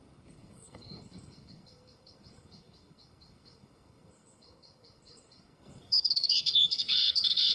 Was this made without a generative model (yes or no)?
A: no